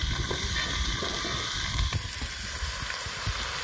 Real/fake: real